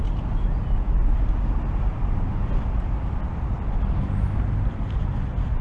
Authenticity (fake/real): real